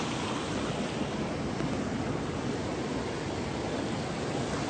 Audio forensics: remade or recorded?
recorded